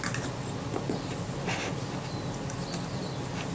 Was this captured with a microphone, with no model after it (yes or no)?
yes